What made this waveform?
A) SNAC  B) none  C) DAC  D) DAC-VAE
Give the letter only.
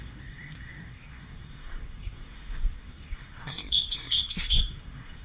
A